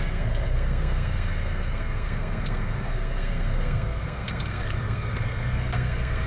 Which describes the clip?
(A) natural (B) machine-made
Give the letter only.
B